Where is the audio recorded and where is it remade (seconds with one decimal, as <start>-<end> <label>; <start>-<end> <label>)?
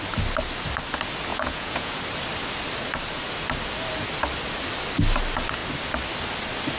0.0-1.3 recorded; 1.3-2.0 remade; 2.0-6.8 recorded